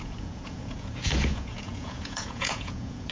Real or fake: fake